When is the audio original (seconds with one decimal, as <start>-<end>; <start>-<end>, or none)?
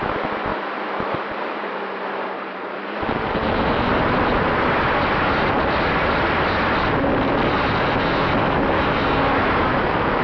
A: 0.0-0.5; 3.1-10.2